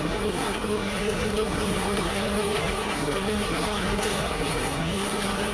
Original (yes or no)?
no